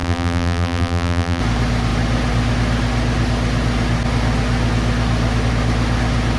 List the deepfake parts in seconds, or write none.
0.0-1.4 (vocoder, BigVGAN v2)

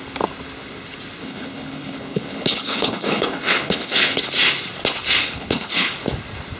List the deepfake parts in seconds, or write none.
1.2-4.2 (codec, HILCodec); 5.2-5.9

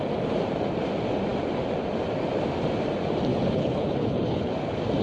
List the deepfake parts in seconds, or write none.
3.3-4.5 (codec, HILCodec)